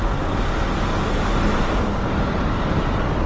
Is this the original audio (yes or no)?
yes